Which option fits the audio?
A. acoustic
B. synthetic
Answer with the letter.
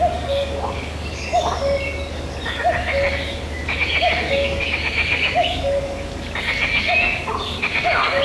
B